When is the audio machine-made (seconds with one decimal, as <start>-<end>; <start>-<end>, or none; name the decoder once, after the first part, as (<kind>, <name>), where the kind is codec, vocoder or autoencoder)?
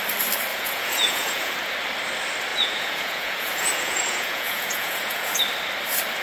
0.5-1.5 (vocoder, Vocos); 2.5-5.4